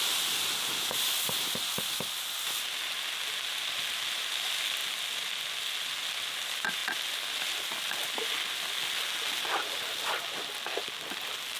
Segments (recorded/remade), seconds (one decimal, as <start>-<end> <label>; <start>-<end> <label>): 0.0-11.6 recorded